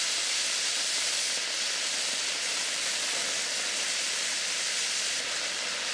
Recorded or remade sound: recorded